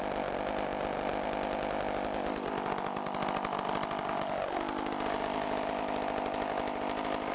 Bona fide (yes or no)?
yes